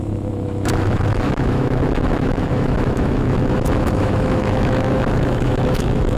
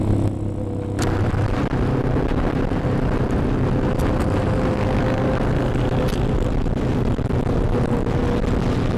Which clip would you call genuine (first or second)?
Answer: second